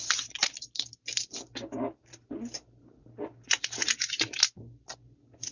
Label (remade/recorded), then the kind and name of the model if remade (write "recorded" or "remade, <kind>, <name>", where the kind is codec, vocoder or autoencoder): recorded